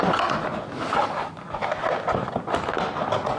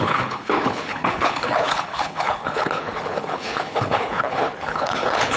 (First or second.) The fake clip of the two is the second